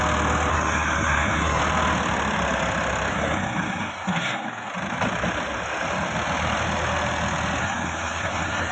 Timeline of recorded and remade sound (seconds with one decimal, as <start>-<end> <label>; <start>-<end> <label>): 0.0-0.5 recorded; 0.5-1.6 remade; 1.6-3.1 recorded; 3.1-4.7 remade; 4.7-7.6 recorded; 7.6-8.7 remade